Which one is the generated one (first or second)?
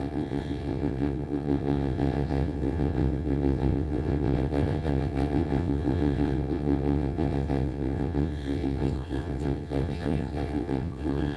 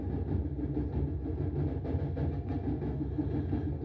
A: first